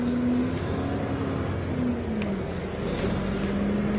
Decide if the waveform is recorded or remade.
recorded